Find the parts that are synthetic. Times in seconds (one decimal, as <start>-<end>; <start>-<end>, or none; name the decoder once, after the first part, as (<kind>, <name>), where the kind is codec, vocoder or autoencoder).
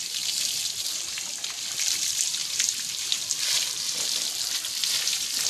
none